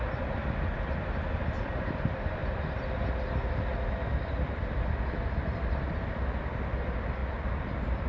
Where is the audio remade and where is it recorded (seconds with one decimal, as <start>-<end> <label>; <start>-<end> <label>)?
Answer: 0.0-0.4 remade; 0.4-1.3 recorded; 1.3-2.4 remade; 2.4-4.2 recorded; 4.2-8.1 remade